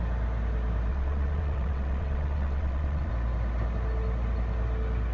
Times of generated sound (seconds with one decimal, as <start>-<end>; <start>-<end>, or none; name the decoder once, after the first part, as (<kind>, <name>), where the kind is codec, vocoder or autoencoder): 0.9-3.1 (vocoder, WaveNeXt)